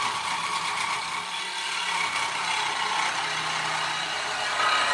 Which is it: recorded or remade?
recorded